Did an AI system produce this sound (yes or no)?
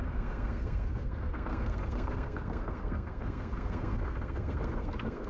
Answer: yes